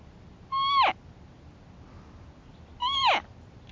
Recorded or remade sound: recorded